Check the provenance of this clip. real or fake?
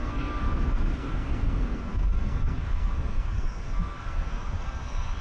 fake